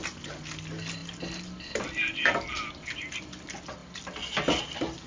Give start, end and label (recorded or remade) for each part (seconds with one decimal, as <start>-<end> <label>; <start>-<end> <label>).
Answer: 0.0-5.1 recorded